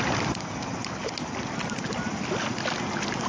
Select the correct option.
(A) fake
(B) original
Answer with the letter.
B